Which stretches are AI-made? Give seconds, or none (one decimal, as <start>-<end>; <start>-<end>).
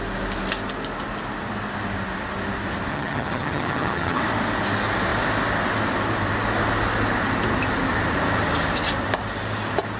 2.9-4.2